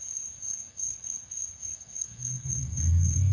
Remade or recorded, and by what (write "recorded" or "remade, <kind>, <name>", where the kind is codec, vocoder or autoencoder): remade, codec, SNAC